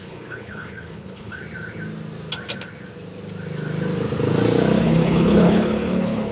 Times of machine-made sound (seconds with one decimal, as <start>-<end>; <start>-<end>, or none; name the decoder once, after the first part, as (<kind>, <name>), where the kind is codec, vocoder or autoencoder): 0.0-1.4 (codec, HILCodec); 4.8-6.3